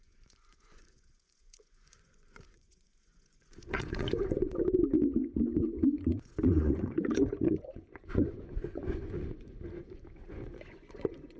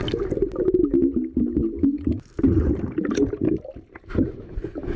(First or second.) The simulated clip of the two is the first